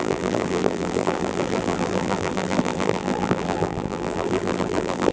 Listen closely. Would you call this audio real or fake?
fake